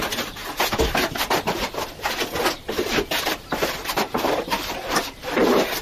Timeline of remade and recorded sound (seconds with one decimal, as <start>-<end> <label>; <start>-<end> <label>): 0.0-0.4 remade; 0.4-3.9 recorded; 3.9-5.8 remade